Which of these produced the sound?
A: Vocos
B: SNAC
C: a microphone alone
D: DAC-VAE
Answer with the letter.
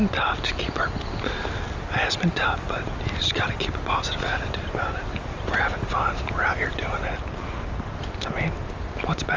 C